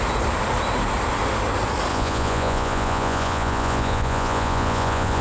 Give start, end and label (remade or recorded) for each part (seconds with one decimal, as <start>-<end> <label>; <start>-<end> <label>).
0.0-1.9 recorded; 1.9-5.2 remade